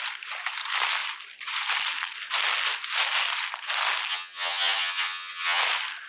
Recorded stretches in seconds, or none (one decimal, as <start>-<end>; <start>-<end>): 0.0-4.1; 5.6-6.1